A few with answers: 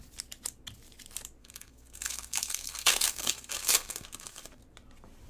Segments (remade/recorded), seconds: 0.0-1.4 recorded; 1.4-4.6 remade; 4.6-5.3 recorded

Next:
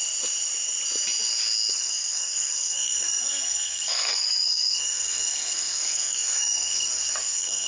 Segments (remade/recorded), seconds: 0.0-1.7 recorded; 1.7-7.7 remade

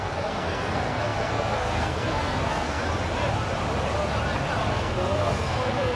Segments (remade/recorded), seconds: 0.0-2.8 remade; 2.8-4.7 recorded; 4.7-6.0 remade

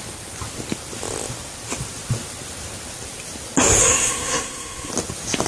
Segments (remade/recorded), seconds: 0.0-3.8 recorded; 3.8-4.9 remade; 4.9-5.5 recorded

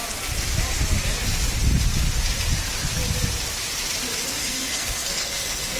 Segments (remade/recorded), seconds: 0.0-4.4 recorded; 4.4-5.8 remade

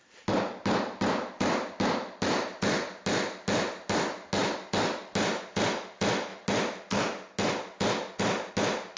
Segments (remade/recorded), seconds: 0.0-9.0 recorded

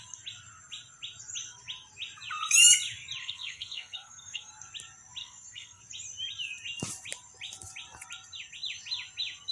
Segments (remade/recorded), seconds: 0.0-3.2 recorded; 3.2-4.5 remade; 4.5-5.2 recorded; 5.2-5.8 remade; 5.8-9.5 recorded

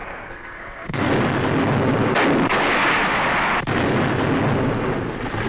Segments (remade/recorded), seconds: 0.0-1.1 remade; 1.1-5.5 recorded